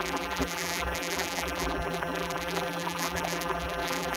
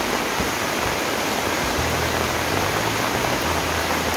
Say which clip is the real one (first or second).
second